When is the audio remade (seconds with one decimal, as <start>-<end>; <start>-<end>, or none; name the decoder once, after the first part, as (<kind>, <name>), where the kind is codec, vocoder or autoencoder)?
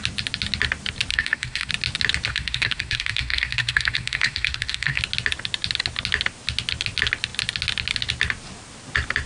1.1-1.7 (codec, SNAC); 2.3-5.0